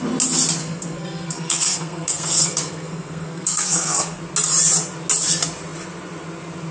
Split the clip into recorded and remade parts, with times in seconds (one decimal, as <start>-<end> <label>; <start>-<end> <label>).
0.0-0.6 recorded; 0.6-4.2 remade; 4.2-6.7 recorded